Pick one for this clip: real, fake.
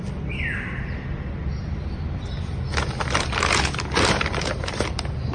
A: real